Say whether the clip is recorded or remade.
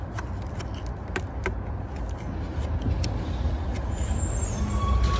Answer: recorded